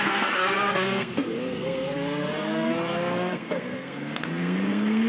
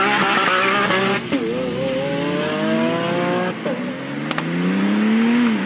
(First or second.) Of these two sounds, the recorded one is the second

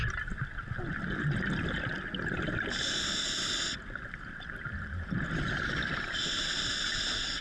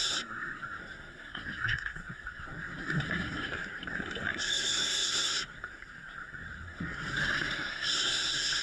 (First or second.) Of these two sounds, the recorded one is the first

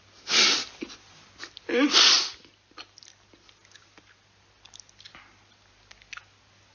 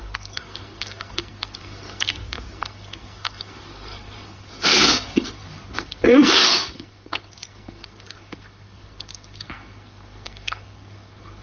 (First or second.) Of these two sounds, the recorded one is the first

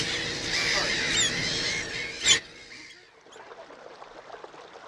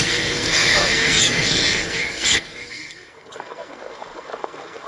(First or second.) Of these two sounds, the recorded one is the first